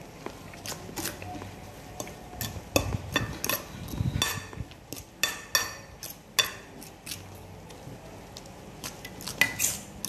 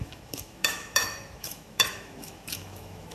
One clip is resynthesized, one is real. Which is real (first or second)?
first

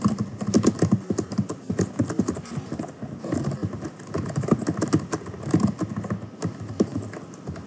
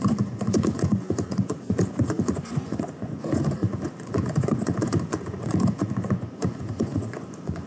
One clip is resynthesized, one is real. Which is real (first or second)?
first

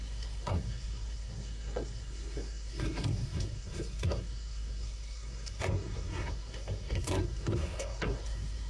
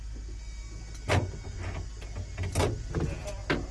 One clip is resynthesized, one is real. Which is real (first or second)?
second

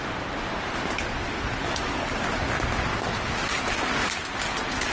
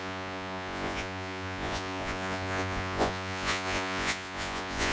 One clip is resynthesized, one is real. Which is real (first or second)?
first